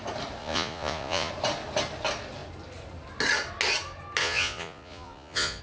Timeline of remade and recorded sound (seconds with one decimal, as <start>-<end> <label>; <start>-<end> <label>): 0.0-0.4 recorded; 0.4-1.3 remade; 1.3-4.2 recorded; 4.2-5.6 remade